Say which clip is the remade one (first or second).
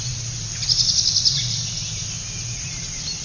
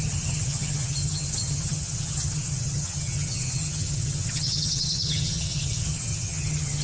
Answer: second